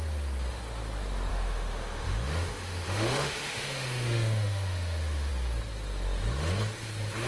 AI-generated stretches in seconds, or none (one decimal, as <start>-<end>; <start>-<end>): 1.3-5.3

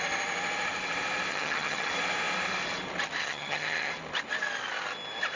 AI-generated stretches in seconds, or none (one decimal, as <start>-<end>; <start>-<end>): 1.3-1.9; 3.2-3.9

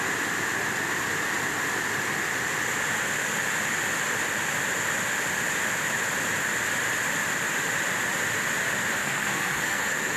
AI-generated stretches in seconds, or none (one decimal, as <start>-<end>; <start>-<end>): 9.0-10.2

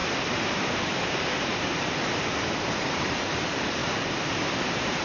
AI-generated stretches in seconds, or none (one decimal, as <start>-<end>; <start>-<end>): 0.0-3.8; 4.6-5.0

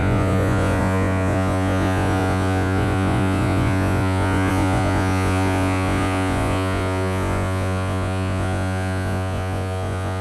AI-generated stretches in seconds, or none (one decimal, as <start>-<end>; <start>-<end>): 0.0-10.2

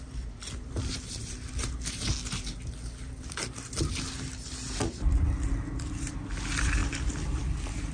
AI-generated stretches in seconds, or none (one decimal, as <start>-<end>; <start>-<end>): none

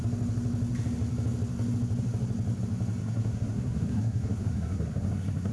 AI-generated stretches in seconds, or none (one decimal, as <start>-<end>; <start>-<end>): 3.0-5.5